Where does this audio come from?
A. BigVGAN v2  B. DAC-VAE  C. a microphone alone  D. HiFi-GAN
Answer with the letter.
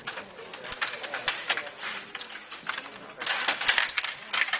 C